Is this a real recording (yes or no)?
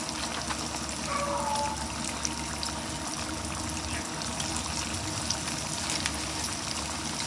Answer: yes